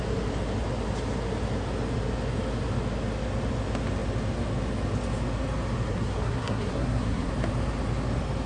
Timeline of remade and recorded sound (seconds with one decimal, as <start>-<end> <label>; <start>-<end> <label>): 0.0-5.9 recorded; 5.9-7.3 remade; 7.3-8.5 recorded